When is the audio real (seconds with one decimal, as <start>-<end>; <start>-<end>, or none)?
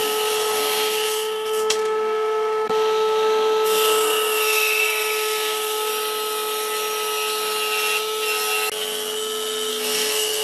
5.9-9.7